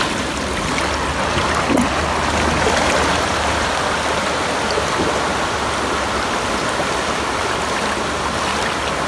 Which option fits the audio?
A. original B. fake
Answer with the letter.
A